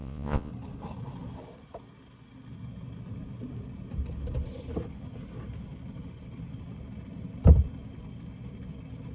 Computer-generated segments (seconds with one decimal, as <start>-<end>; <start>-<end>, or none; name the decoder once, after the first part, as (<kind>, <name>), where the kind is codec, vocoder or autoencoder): 0.0-0.5 (vocoder, Vocos)